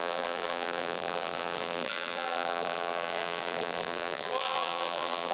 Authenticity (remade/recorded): remade